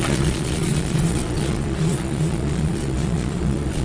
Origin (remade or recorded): remade